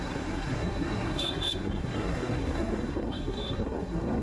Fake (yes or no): yes